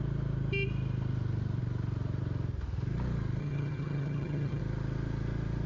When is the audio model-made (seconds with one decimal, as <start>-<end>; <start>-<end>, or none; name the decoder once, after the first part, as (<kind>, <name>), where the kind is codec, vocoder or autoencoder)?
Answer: 3.4-4.6 (vocoder, HiFi-GAN)